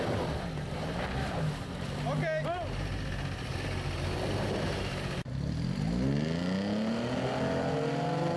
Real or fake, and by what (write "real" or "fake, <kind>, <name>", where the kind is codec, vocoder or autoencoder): real